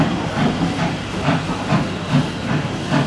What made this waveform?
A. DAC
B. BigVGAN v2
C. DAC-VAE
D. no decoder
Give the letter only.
D